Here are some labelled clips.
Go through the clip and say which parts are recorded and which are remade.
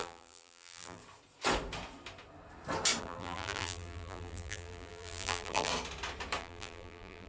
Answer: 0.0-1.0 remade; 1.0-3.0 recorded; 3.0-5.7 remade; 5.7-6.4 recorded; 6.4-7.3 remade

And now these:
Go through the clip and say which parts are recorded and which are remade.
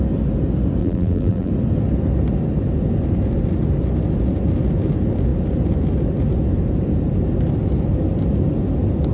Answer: 0.0-0.8 recorded; 0.8-1.5 remade; 1.5-9.1 recorded